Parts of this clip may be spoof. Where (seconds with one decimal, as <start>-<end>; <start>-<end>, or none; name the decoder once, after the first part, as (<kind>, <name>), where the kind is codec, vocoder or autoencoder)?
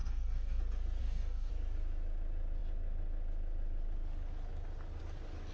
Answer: 0.0-0.6 (codec, DAC); 1.0-1.5